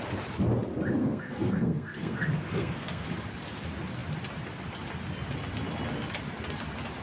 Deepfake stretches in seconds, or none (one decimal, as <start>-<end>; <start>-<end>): 1.0-3.1